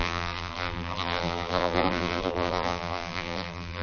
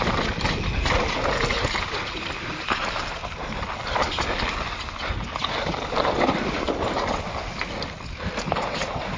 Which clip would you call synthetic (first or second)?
first